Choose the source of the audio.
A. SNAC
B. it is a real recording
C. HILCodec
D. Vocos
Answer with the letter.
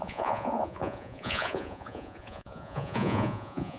D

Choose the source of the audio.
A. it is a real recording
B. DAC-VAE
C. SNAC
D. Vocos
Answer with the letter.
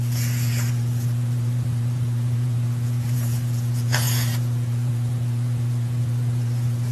D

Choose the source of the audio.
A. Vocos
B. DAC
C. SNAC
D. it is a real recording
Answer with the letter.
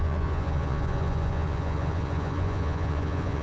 A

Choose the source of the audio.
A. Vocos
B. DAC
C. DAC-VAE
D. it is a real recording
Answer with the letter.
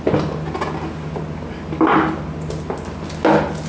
D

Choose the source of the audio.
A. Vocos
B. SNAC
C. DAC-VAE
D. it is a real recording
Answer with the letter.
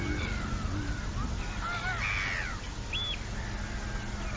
D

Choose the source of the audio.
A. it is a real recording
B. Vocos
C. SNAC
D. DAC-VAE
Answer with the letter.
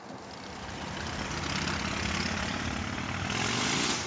A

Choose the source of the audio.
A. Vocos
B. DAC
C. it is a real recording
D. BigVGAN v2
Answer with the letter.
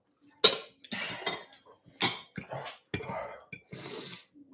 C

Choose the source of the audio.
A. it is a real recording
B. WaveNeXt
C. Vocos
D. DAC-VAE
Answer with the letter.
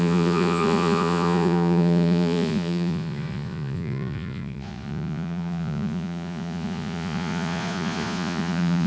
C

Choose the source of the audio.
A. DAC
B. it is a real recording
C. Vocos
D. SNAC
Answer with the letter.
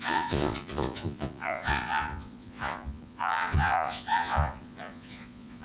C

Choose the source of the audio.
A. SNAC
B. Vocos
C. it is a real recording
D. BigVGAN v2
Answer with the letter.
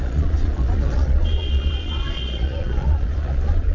B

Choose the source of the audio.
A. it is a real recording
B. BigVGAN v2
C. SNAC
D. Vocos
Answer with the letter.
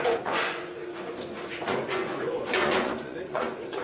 D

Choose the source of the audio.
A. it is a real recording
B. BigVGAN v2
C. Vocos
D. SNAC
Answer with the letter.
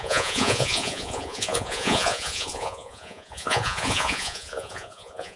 C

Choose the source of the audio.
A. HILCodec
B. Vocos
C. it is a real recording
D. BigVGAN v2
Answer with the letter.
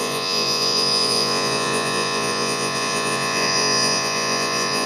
B